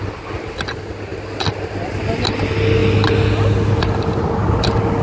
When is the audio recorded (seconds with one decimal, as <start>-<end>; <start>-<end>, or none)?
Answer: 0.0-5.0